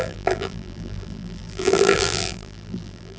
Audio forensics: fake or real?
fake